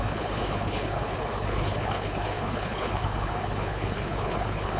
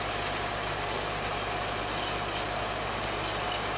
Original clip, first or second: second